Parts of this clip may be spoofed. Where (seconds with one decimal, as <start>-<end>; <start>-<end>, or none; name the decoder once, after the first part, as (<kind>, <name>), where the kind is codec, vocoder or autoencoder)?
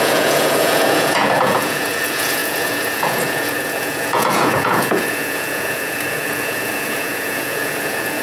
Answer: 0.0-8.2 (vocoder, Vocos)